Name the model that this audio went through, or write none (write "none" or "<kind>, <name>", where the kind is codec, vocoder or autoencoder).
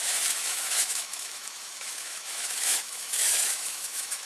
autoencoder, DAC-VAE